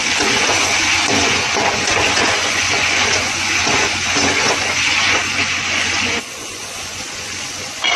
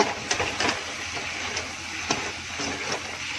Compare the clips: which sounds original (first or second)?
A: second